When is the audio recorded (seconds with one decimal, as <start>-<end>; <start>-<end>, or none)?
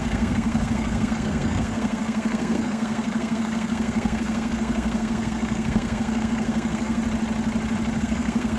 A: 7.0-8.0